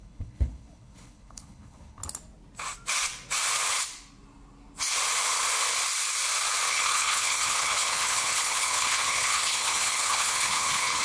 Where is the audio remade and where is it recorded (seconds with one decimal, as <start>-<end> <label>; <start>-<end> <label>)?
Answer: 0.0-2.0 remade; 2.0-6.7 recorded; 6.7-11.0 remade

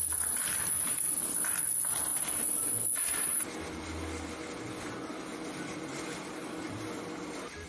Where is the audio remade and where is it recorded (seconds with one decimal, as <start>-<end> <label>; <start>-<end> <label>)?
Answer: 0.0-5.3 recorded; 5.3-7.0 remade; 7.0-7.7 recorded

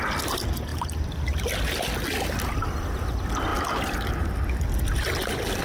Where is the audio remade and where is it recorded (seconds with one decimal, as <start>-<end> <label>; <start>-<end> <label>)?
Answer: 0.0-5.6 recorded

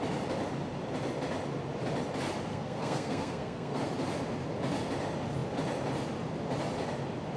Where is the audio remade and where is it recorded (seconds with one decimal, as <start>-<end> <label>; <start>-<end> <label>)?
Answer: 0.0-2.5 recorded; 2.5-3.8 remade; 3.8-7.4 recorded

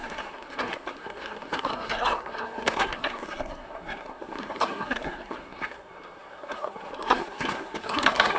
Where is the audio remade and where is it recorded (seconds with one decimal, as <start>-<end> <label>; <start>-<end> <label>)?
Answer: 0.0-8.4 remade

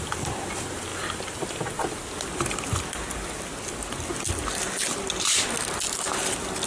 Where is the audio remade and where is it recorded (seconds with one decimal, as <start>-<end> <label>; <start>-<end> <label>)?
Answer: 0.0-6.7 recorded

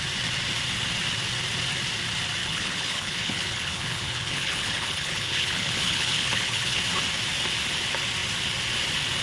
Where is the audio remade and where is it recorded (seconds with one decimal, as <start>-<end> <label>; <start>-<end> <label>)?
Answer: 0.0-2.4 recorded; 2.4-6.8 remade; 6.8-9.2 recorded

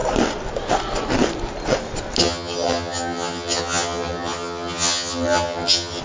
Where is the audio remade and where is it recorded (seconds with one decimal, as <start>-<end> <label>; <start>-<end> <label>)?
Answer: 0.0-2.2 recorded; 2.2-6.0 remade